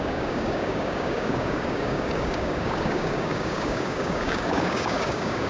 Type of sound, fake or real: fake